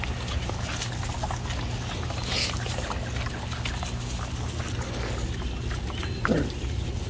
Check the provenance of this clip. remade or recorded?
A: recorded